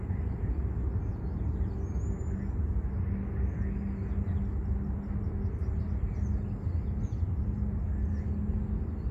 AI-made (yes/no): no